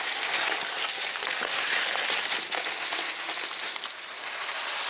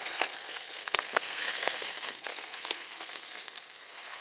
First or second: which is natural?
first